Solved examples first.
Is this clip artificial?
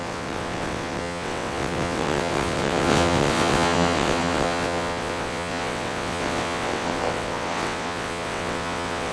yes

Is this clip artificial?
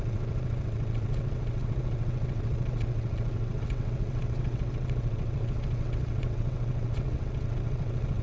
yes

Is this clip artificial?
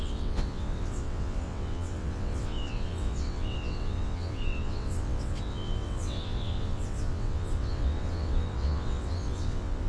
yes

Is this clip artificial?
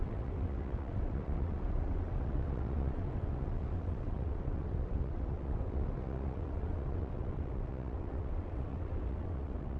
yes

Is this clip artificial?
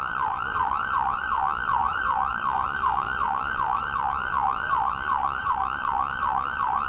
yes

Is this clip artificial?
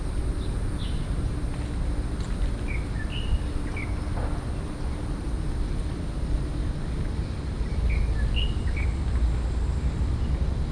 no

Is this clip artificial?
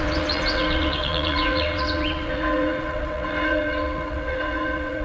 yes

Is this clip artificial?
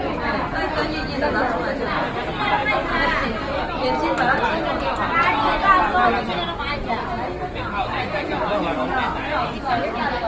no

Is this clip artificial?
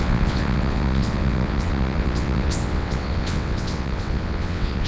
yes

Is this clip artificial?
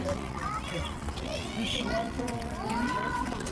yes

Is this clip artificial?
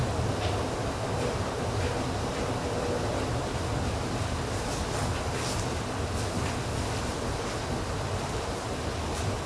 no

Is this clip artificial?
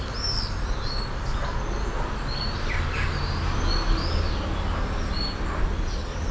no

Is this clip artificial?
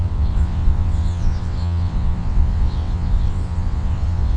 yes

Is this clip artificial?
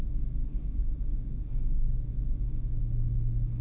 no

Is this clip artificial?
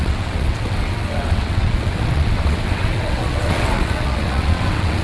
yes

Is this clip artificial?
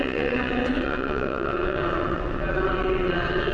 yes